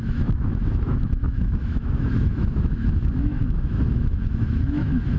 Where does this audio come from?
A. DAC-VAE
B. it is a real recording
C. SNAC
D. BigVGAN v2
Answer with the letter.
A